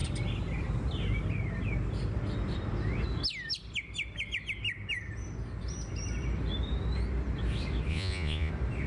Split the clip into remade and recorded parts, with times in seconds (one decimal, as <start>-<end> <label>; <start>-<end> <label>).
0.0-7.9 recorded; 7.9-8.5 remade; 8.5-8.9 recorded